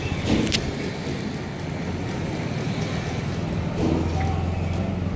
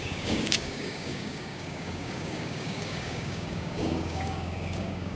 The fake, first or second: second